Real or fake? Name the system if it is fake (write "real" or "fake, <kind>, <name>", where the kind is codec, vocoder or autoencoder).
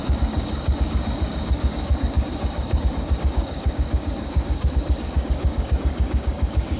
fake, codec, DAC